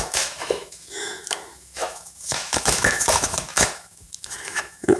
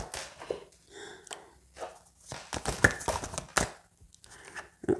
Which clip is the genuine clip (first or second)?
second